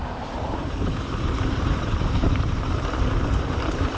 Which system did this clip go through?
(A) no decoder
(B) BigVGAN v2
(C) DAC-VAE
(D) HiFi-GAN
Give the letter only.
B